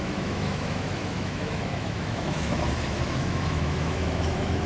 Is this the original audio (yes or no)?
no